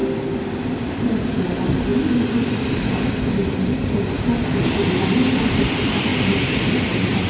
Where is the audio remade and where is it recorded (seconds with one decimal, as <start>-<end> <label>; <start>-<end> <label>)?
0.0-7.3 recorded